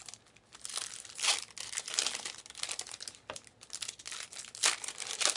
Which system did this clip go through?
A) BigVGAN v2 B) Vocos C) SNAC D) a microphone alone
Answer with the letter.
D